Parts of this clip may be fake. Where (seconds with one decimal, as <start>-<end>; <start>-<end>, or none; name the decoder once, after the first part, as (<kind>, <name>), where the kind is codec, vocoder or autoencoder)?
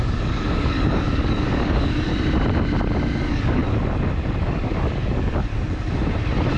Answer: 0.0-2.1 (codec, DAC); 3.2-3.6; 4.4-5.5